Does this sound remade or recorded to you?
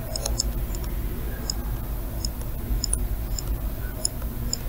recorded